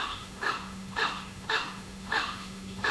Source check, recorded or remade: remade